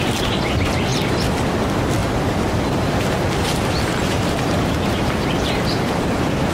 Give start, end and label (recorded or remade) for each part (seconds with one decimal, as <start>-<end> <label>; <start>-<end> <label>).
0.0-2.0 recorded; 2.0-5.9 remade; 5.9-6.5 recorded